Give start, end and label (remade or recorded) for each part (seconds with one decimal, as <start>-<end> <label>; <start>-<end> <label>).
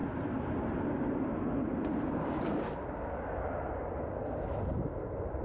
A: 0.0-5.4 recorded